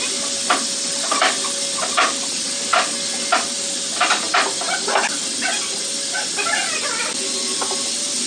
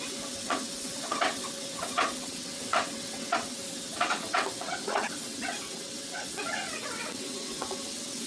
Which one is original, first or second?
first